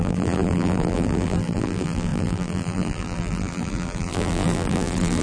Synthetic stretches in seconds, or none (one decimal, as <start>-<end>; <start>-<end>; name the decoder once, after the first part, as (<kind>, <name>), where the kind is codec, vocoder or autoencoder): 0.0-5.2 (vocoder, BigVGAN v2)